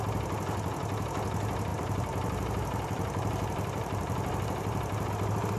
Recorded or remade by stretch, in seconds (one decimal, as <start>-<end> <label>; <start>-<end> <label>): 0.0-1.7 recorded; 1.7-5.1 remade; 5.1-5.6 recorded